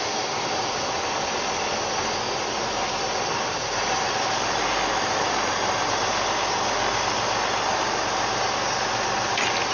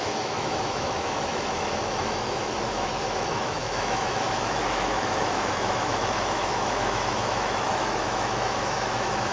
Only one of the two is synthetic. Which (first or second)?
second